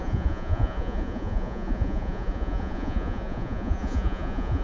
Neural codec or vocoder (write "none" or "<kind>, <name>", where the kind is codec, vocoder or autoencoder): vocoder, Vocos